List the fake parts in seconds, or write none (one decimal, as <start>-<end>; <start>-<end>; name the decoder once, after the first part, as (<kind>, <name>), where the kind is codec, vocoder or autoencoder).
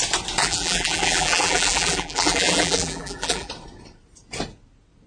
0.4-3.5 (vocoder, BigVGAN v2)